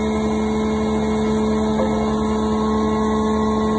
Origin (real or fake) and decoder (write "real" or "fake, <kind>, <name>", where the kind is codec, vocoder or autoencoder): real